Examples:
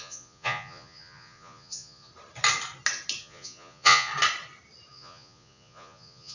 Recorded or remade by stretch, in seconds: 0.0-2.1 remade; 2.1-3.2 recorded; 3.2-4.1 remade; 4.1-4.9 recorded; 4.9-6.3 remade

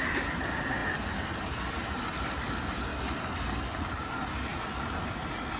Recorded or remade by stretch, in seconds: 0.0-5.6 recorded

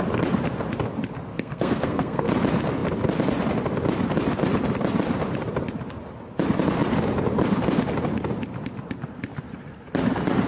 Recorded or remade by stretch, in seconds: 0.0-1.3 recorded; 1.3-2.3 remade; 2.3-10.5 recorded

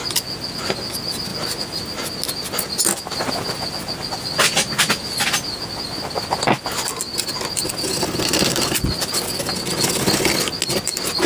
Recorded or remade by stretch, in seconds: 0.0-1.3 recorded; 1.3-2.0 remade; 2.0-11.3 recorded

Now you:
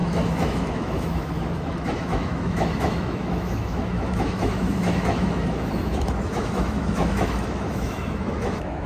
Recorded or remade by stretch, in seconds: 0.0-8.9 remade

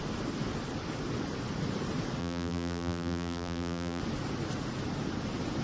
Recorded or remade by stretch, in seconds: 0.0-2.2 recorded; 2.2-4.0 remade; 4.0-5.6 recorded

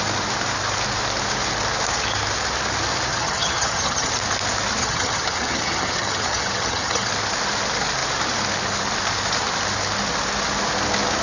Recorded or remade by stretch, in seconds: 0.0-3.1 recorded; 3.1-4.1 remade; 4.1-4.8 recorded; 4.8-7.1 remade; 7.1-11.2 recorded

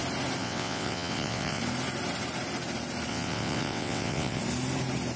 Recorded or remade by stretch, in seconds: 0.0-0.4 recorded; 0.4-1.6 remade; 1.6-3.1 recorded; 3.1-4.4 remade; 4.4-5.2 recorded